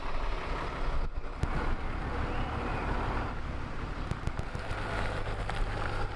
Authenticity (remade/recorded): recorded